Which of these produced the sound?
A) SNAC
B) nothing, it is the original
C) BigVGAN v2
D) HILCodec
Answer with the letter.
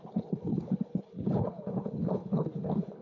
D